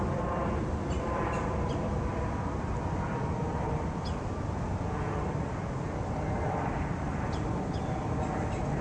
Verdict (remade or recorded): recorded